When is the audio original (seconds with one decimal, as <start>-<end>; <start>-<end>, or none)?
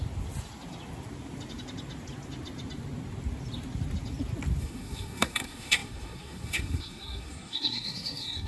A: 0.0-4.6